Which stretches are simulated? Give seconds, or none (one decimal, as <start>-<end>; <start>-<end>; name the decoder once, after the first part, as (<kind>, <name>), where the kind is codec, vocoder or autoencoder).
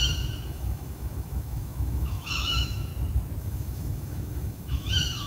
0.0-2.9 (autoencoder, DAC-VAE); 3.4-5.3